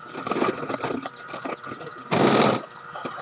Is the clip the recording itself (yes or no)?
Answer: yes